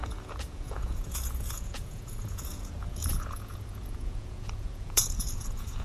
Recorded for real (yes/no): no